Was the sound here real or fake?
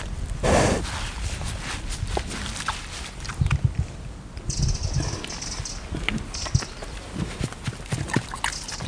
real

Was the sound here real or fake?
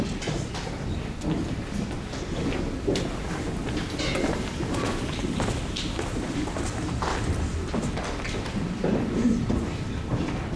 real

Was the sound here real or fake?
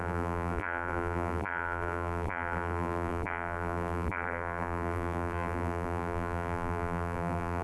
fake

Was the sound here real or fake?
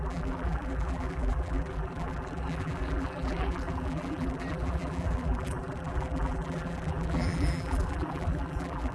fake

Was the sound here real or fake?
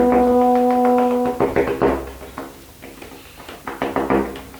real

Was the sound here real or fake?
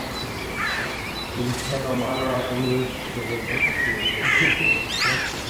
fake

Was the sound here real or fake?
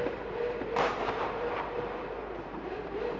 fake